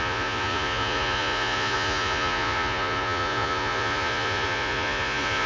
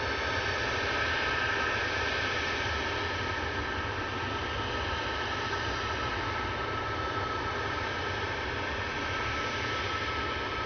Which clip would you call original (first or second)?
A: second